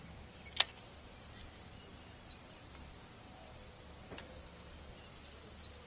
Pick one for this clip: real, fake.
real